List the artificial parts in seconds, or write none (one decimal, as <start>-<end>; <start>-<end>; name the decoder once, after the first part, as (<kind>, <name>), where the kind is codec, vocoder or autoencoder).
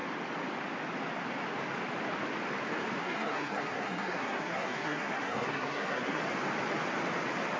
3.0-6.2 (codec, SNAC)